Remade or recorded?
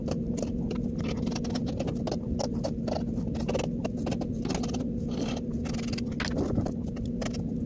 recorded